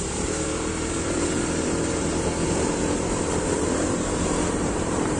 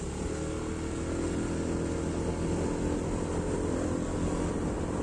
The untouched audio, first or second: second